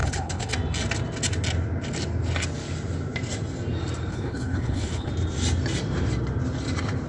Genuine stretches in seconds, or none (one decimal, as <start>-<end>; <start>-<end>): 0.5-4.1; 5.1-7.1

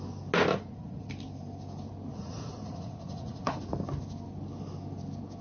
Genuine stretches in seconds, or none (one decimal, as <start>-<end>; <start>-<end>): 0.0-0.5; 1.1-2.1; 3.6-5.4